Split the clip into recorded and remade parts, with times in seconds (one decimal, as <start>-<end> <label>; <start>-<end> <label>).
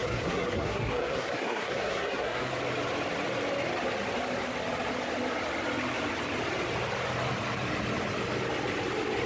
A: 0.0-2.5 remade; 2.5-9.3 recorded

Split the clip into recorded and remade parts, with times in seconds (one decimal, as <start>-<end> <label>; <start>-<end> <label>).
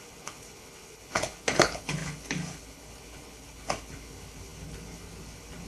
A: 0.0-5.7 remade